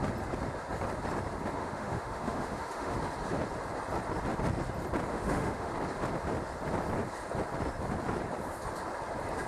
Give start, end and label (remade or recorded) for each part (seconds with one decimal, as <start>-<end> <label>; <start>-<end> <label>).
0.0-1.6 recorded; 1.6-2.9 remade; 2.9-5.1 recorded; 5.1-5.7 remade; 5.7-9.5 recorded